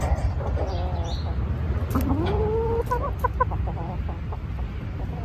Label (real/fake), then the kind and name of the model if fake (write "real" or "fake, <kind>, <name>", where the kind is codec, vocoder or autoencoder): real